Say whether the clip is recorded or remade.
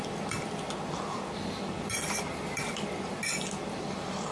recorded